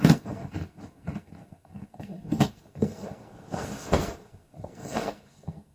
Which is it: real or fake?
fake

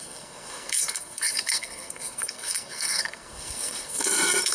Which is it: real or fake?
fake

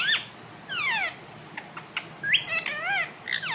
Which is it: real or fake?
real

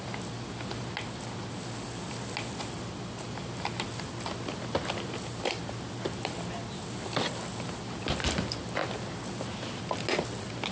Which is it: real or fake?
real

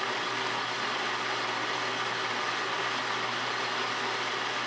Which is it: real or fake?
real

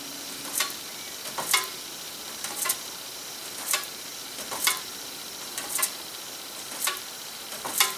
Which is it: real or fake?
fake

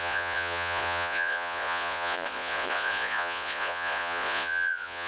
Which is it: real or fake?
fake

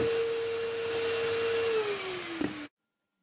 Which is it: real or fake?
real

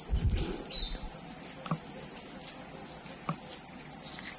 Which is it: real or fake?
real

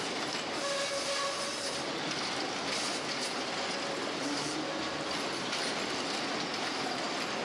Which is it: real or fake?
real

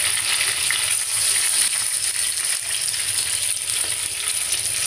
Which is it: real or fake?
real